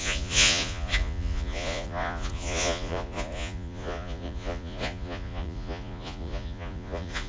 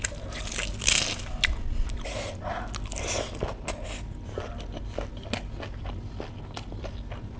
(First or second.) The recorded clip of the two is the second